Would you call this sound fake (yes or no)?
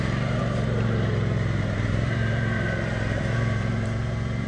yes